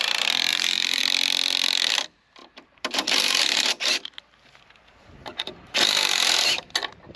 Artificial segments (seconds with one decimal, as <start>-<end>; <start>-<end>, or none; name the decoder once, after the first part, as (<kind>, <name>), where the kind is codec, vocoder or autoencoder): 0.5-1.0 (vocoder, BigVGAN v2); 2.4-6.7